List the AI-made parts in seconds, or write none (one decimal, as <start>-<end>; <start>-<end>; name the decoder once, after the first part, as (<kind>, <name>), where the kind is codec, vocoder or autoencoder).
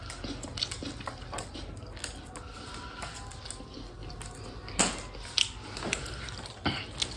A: none